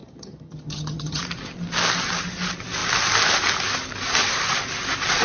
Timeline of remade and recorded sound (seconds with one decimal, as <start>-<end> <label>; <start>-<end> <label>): 0.0-1.2 remade; 1.2-5.2 recorded